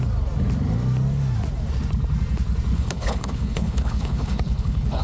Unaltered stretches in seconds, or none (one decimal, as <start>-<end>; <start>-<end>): 0.0-2.7